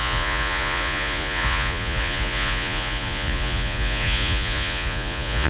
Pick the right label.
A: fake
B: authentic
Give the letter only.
A